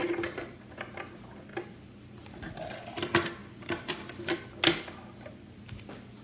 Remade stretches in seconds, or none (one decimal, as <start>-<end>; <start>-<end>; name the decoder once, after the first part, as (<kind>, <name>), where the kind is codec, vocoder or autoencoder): 1.5-2.5 (vocoder, BigVGAN v2); 3.4-4.3